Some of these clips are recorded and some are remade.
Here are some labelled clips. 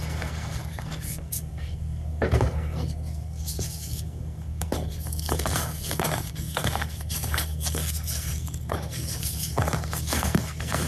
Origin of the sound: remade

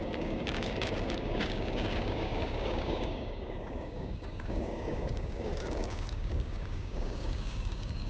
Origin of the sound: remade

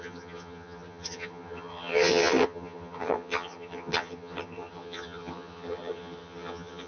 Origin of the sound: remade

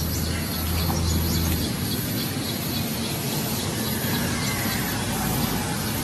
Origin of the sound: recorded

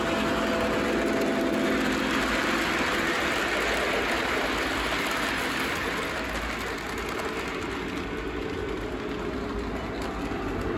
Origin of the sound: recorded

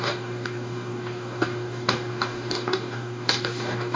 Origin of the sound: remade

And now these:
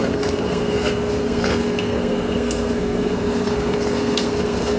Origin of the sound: remade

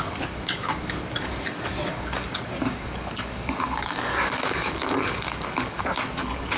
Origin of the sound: remade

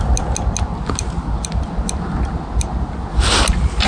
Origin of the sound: recorded